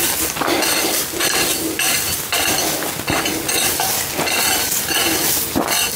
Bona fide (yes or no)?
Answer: yes